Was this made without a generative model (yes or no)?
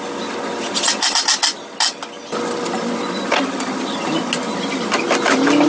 yes